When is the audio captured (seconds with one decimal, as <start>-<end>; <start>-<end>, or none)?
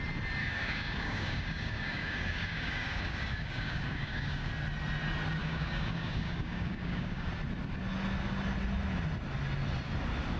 0.0-0.4; 4.5-5.4; 7.3-10.4